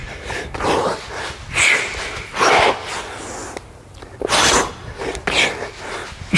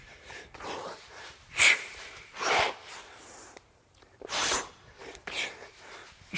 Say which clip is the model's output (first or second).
second